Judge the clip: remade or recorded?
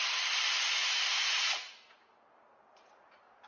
recorded